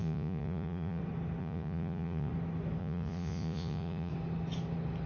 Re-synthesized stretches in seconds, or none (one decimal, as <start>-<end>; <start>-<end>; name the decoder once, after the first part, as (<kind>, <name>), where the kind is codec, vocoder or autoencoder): 0.0-1.0 (vocoder, Vocos); 1.4-2.3; 2.8-4.1